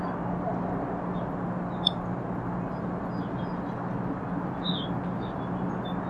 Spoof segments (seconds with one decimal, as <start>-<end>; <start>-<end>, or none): none